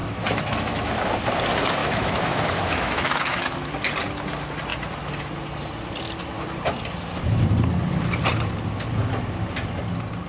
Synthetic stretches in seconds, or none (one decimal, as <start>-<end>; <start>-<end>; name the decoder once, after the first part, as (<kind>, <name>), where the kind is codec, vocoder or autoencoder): 0.0-0.9 (autoencoder, DAC-VAE); 1.8-3.7